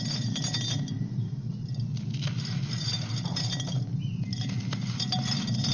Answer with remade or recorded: recorded